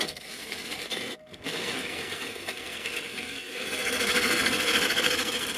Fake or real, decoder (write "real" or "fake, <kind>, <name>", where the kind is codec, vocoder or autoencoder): fake, codec, SNAC